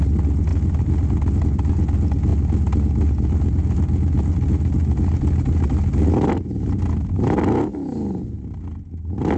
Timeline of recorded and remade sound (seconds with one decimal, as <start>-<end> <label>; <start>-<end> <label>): 0.0-9.4 recorded

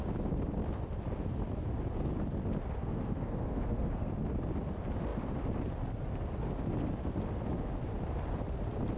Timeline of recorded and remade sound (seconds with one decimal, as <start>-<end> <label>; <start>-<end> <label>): 0.0-2.8 recorded; 2.8-4.1 remade; 4.1-9.0 recorded

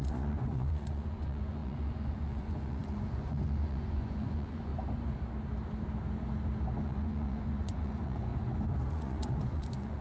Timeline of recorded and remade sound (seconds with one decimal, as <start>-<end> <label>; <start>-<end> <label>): 0.0-4.7 remade; 4.7-6.8 recorded; 6.8-8.3 remade; 8.3-8.9 recorded; 8.9-10.0 remade

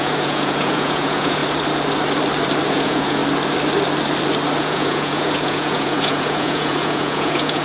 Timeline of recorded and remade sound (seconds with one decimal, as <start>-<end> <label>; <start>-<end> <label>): 0.0-1.4 remade; 1.4-2.7 recorded; 2.7-3.2 remade; 3.2-4.6 recorded; 4.6-7.6 remade

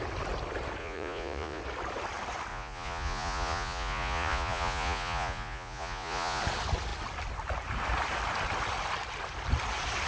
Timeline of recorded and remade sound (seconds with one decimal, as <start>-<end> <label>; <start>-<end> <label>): 0.0-0.8 recorded; 0.8-1.6 remade; 1.6-2.5 recorded; 2.5-6.4 remade; 6.4-10.1 recorded

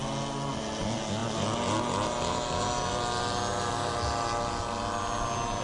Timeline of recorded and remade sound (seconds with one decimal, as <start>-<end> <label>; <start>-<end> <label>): 0.0-5.6 recorded

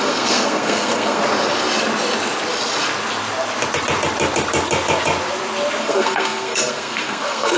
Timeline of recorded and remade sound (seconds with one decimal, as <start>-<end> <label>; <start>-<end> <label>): 0.0-1.2 remade; 1.2-5.8 recorded; 5.8-7.6 remade

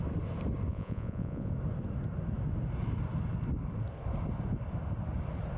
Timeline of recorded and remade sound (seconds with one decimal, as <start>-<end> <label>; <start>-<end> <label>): 0.0-0.7 recorded; 0.7-1.5 remade; 1.5-5.6 recorded